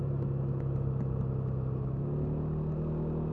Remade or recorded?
recorded